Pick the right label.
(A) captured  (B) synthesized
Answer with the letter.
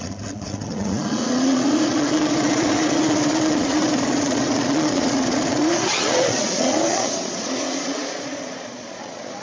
B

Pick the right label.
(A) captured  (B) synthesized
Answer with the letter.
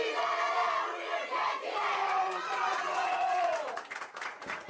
B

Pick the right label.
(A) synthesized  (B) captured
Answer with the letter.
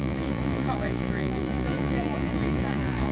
A